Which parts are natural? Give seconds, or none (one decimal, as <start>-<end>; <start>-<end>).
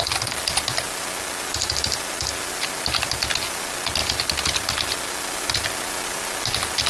0.0-6.9